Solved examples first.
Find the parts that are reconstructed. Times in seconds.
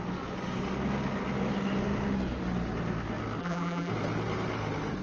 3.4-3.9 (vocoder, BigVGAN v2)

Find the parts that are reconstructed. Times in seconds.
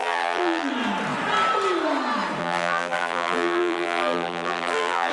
0.0-0.7 (vocoder, BigVGAN v2); 2.4-5.1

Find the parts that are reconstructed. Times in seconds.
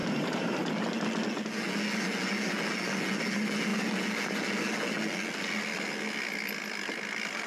0.0-0.7 (vocoder, BigVGAN v2)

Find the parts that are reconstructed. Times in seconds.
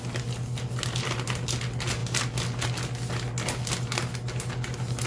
none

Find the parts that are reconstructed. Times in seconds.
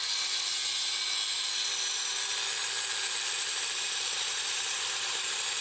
3.4-5.6 (vocoder, BigVGAN v2)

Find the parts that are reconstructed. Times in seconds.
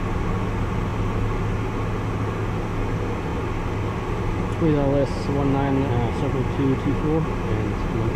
none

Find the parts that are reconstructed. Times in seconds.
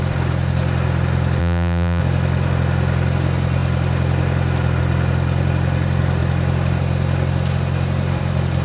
1.4-2.0 (vocoder, BigVGAN v2)